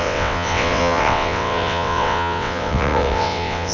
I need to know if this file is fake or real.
fake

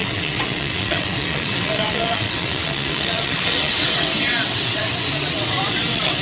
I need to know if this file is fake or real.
fake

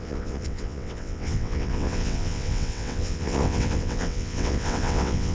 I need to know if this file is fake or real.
fake